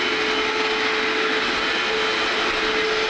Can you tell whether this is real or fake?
real